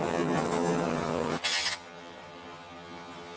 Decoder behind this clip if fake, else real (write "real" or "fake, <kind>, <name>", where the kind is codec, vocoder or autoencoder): fake, vocoder, HiFi-GAN